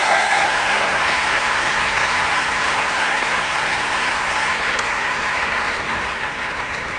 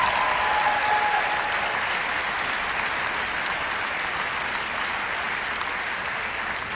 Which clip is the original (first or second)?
second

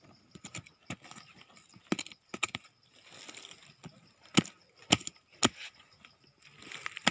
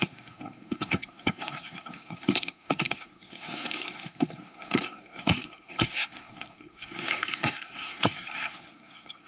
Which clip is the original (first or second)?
first